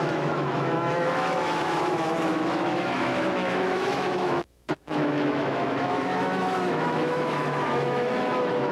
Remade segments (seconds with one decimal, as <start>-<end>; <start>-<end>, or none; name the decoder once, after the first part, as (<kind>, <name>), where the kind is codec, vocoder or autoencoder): 0.0-8.7 (autoencoder, DAC-VAE)